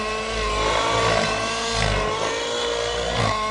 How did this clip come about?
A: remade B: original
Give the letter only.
B